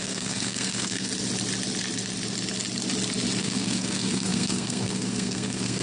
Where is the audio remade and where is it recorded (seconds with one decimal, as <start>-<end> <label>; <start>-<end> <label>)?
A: 0.0-1.1 remade; 1.1-3.4 recorded; 3.4-5.8 remade